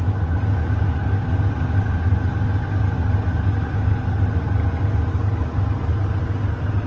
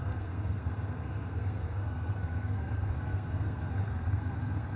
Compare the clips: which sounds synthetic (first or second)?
second